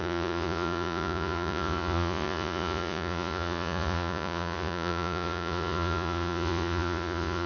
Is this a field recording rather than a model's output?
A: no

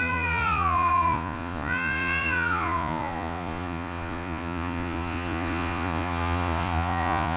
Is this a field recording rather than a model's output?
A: no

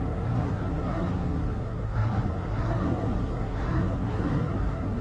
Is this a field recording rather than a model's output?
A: no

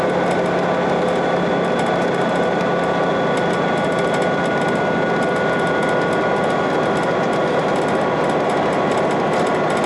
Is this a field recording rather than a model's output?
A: yes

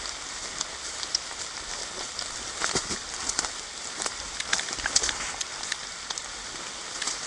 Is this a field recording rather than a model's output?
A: yes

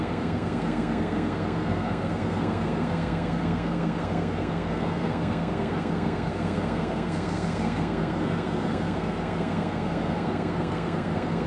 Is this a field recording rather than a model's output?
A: no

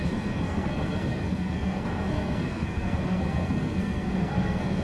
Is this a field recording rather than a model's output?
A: no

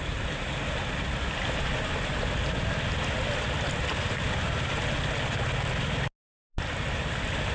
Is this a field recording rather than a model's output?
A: yes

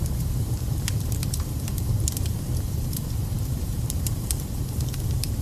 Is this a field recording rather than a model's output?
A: no